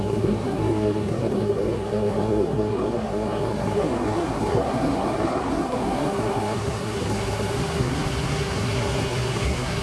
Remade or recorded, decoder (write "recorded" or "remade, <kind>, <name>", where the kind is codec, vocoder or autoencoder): remade, codec, SNAC